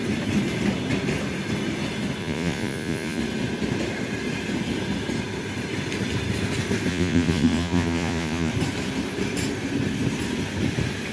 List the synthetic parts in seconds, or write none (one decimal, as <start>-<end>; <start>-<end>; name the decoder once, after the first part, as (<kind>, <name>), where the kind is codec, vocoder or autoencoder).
2.2-3.2 (vocoder, Vocos); 6.9-8.5

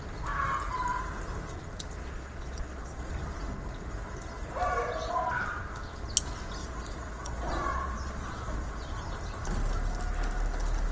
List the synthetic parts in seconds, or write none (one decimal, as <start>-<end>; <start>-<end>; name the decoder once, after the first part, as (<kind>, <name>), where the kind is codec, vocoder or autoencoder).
2.0-3.1 (vocoder, Vocos); 6.6-9.0

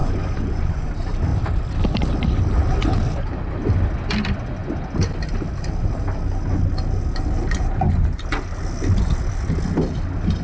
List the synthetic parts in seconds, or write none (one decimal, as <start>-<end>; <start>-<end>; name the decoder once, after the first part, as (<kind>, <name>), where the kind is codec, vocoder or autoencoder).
0.0-0.9 (vocoder, Vocos)

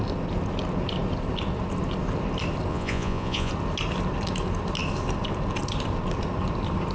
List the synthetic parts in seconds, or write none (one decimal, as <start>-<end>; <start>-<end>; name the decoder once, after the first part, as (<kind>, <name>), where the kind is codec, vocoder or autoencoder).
2.7-3.5 (vocoder, Vocos)

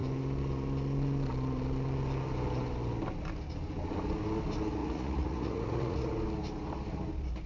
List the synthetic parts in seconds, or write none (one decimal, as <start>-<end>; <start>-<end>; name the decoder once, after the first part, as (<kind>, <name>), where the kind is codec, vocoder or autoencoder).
4.8-6.1 (vocoder, Vocos)

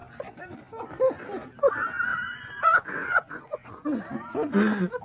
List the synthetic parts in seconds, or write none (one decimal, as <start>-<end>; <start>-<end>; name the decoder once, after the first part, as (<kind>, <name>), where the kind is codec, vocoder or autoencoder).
2.1-4.0 (vocoder, Vocos)